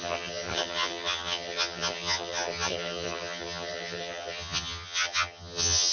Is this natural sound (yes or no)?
no